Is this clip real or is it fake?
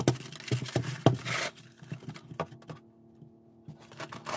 real